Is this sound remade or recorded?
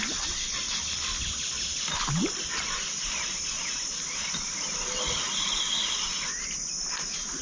recorded